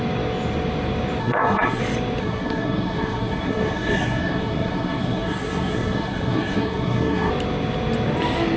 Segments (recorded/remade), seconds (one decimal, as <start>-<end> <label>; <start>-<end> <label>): 0.0-1.2 recorded; 1.2-1.8 remade; 1.8-2.2 recorded; 2.2-7.3 remade; 7.3-8.6 recorded